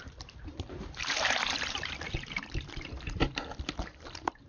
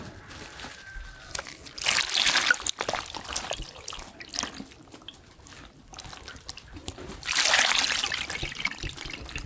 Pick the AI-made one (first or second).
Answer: first